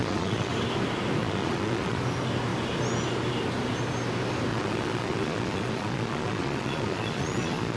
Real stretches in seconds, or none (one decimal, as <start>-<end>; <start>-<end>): 0.5-1.2; 2.0-4.5